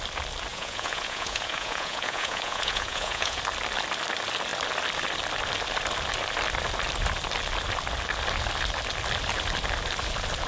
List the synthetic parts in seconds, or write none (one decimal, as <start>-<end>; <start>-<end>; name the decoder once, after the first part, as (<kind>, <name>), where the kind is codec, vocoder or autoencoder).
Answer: 0.5-3.4 (vocoder, Vocos)